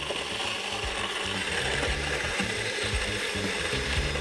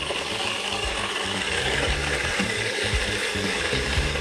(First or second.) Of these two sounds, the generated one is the second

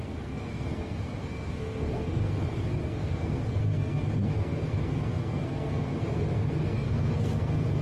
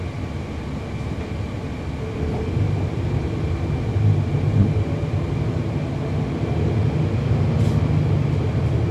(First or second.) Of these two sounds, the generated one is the first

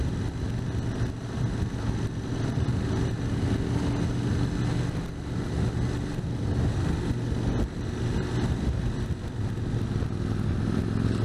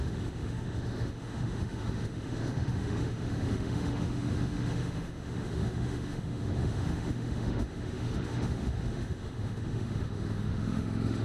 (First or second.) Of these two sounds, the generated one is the second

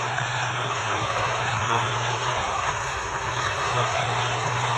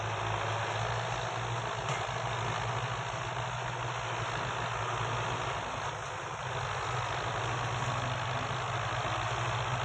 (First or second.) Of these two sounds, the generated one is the first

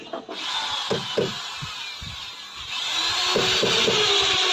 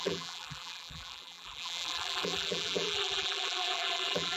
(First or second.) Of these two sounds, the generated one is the second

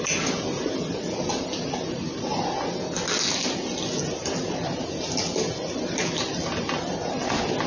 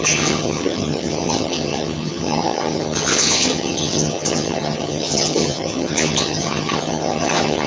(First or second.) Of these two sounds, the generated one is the second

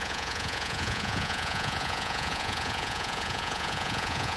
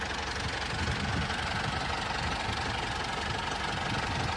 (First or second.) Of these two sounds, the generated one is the first